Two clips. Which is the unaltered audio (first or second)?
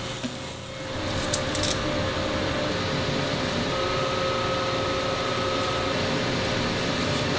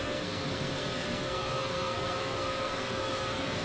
first